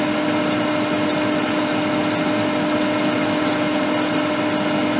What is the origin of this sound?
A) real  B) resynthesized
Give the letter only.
A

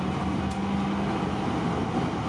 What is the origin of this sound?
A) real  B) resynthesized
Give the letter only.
A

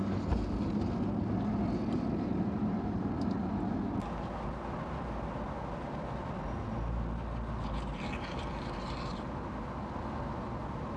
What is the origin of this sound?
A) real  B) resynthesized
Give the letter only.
A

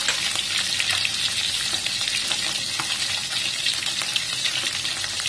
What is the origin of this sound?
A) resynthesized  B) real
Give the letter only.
B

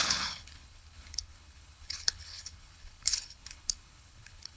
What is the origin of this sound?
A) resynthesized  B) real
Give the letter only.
A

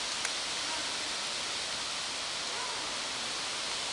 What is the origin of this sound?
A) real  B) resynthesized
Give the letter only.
A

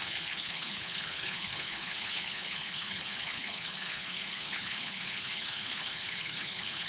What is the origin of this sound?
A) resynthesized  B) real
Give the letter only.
A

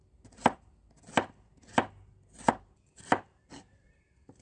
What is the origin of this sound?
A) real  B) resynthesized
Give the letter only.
A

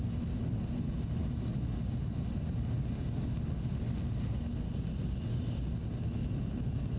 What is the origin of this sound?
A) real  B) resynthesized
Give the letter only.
A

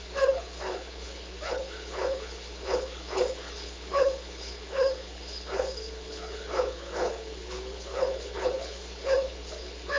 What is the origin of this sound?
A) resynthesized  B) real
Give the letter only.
A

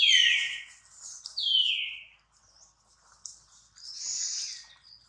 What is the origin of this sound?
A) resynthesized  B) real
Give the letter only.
B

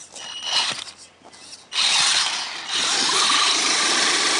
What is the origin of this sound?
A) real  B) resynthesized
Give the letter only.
A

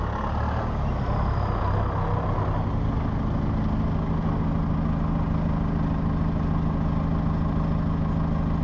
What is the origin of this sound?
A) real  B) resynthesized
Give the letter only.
A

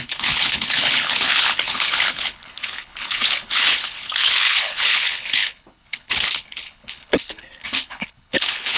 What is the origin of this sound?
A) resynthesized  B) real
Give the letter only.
A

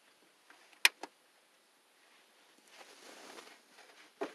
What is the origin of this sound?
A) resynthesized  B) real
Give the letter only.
B